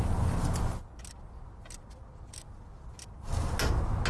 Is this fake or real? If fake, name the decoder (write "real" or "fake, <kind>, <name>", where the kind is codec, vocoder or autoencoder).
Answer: real